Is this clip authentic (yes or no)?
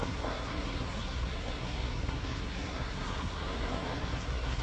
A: no